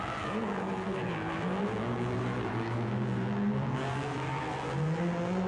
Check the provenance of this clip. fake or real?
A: fake